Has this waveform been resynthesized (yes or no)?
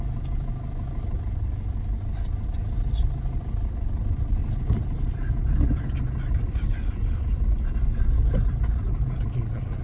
no